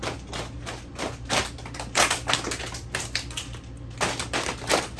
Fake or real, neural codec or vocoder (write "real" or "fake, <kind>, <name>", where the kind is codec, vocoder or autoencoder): real